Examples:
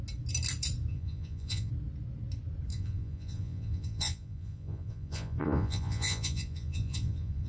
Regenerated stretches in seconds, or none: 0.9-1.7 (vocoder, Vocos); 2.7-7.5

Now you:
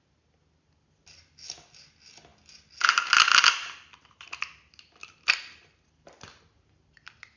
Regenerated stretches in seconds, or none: none

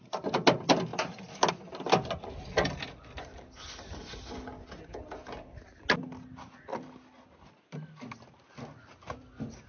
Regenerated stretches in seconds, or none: none

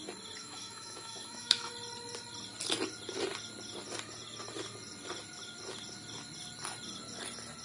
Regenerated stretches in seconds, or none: 0.4-1.7 (autoencoder, DAC-VAE)

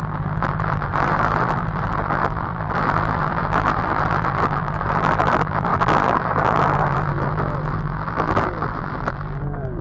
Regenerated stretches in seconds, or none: 0.0-9.8 (vocoder, BigVGAN v2)

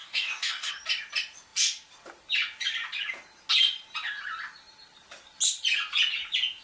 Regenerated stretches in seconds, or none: 0.0-0.7 (codec, DAC)